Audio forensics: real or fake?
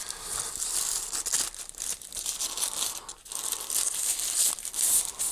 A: real